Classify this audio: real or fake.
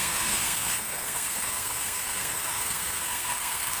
fake